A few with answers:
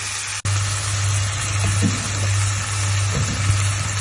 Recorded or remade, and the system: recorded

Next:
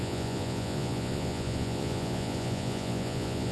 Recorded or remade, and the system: remade, vocoder, Vocos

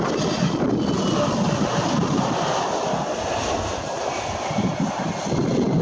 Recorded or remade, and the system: recorded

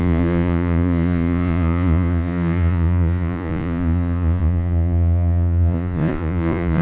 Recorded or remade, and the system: remade, vocoder, Vocos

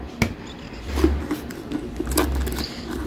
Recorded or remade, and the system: recorded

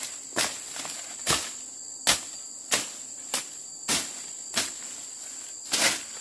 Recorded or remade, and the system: recorded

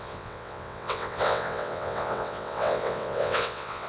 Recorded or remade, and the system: remade, vocoder, WaveNeXt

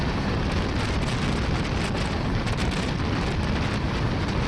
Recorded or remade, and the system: recorded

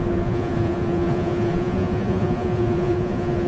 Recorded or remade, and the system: remade, vocoder, Vocos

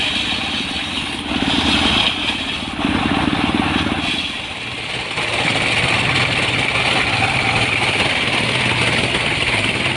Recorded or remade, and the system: recorded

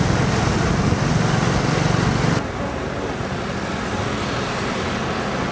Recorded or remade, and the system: recorded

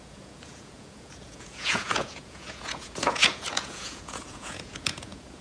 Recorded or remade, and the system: remade, vocoder, Vocos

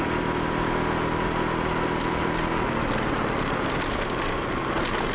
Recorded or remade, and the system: recorded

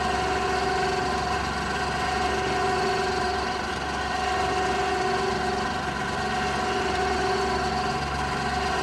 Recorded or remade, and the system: recorded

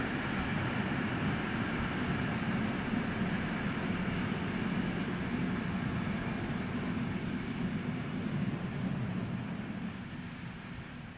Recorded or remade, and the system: recorded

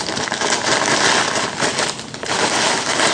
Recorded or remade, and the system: recorded